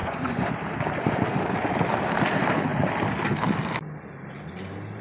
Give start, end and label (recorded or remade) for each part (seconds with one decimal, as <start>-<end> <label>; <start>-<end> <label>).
0.0-0.5 remade; 0.5-5.0 recorded